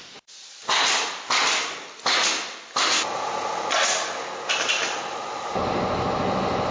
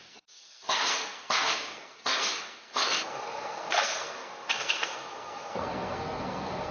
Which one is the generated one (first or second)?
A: second